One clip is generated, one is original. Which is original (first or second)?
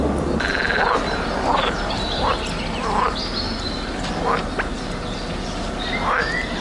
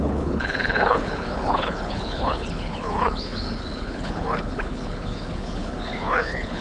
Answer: first